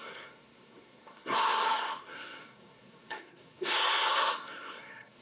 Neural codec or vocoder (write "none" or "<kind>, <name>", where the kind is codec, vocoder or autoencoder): codec, SNAC